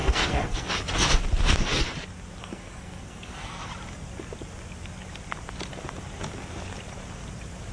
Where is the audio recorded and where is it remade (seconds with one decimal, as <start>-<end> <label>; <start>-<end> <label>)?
0.0-0.7 remade; 0.7-2.4 recorded; 2.4-3.7 remade; 3.7-7.7 recorded

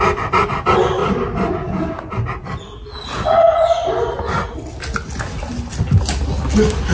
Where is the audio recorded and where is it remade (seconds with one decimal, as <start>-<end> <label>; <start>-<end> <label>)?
0.0-6.9 recorded

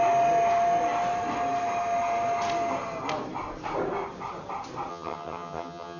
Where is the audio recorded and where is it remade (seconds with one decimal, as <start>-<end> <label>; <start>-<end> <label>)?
0.0-4.9 recorded; 4.9-6.0 remade

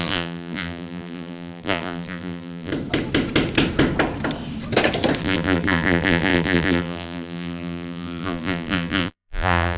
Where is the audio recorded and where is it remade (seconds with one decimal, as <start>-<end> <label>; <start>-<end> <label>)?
0.0-2.7 remade; 2.7-5.2 recorded; 5.2-9.8 remade

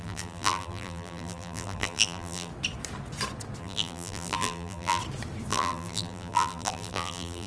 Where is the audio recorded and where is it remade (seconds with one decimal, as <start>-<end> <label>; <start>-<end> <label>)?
0.0-2.5 remade; 2.5-3.6 recorded; 3.6-5.0 remade; 5.0-5.5 recorded; 5.5-7.5 remade

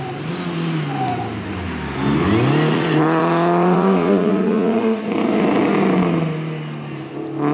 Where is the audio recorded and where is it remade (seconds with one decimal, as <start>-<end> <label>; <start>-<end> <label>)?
0.0-2.7 recorded; 2.7-5.0 remade; 5.0-7.5 recorded

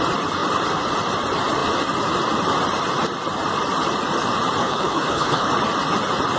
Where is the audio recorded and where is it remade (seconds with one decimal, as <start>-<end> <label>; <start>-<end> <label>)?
0.0-4.6 recorded; 4.6-5.5 remade; 5.5-6.4 recorded

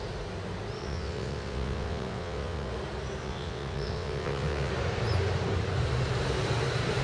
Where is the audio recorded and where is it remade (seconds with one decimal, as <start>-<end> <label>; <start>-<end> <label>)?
0.0-0.8 recorded; 0.8-2.7 remade; 2.7-3.2 recorded; 3.2-4.7 remade; 4.7-7.0 recorded